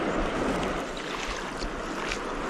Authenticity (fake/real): real